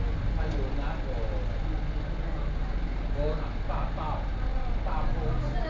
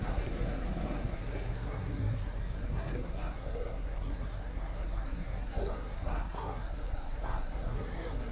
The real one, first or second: first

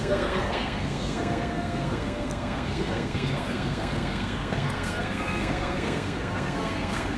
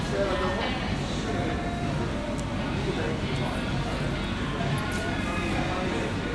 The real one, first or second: second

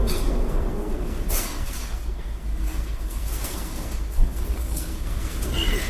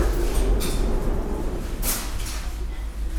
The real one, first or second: second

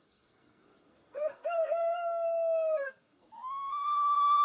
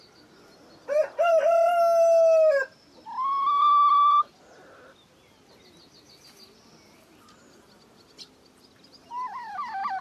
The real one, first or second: second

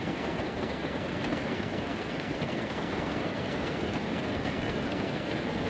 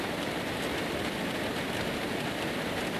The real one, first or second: second